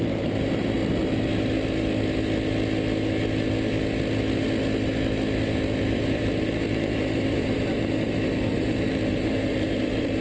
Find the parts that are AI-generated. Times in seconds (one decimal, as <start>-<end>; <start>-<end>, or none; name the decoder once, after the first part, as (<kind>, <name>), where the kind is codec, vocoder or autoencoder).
0.0-0.8 (vocoder, BigVGAN v2); 5.8-10.2